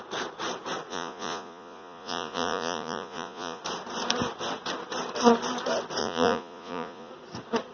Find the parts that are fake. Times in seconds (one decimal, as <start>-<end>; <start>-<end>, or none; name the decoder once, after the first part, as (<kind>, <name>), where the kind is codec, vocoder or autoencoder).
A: 0.9-3.6 (vocoder, Vocos); 6.0-7.1